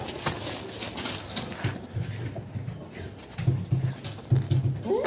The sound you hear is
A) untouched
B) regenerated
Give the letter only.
A